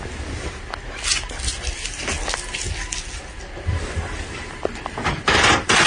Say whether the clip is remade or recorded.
recorded